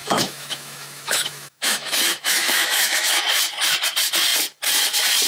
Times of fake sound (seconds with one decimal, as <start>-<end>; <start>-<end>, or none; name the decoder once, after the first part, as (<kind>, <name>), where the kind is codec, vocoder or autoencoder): 0.0-3.2 (autoencoder, DAC-VAE)

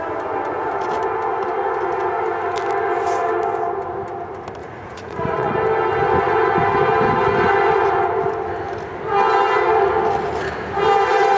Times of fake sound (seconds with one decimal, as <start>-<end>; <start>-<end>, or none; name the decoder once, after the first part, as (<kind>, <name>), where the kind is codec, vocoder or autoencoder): 4.6-5.5 (vocoder, Vocos)

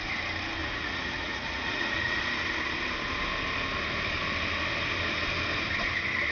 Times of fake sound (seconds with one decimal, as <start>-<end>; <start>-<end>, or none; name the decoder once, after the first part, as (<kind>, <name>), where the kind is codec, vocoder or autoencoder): 0.6-2.2 (vocoder, Vocos)

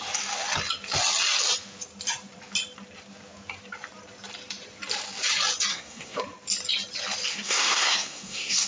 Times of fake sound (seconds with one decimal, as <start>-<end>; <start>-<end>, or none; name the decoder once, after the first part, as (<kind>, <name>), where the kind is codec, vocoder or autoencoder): 5.7-6.2 (codec, SNAC); 7.3-8.7

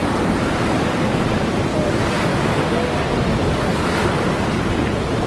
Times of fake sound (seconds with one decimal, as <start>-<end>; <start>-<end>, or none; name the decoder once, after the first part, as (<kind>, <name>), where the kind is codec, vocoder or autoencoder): 0.0-1.1 (vocoder, BigVGAN v2)

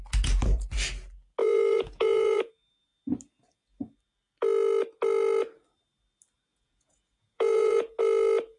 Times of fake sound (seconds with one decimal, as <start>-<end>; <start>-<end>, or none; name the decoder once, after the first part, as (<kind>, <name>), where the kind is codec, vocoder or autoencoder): 1.4-2.5 (vocoder, Vocos); 6.5-8.0

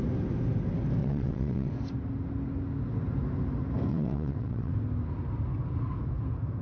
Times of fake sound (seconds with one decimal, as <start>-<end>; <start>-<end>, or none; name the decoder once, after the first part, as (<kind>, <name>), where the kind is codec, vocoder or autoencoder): 1.0-1.7 (vocoder, WaveNeXt); 3.9-4.7

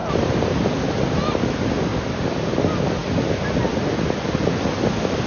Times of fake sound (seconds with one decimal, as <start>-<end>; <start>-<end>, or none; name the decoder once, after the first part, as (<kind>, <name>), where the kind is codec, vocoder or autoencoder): none